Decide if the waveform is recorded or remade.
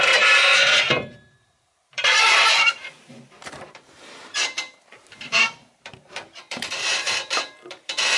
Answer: remade